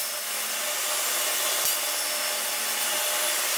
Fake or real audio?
real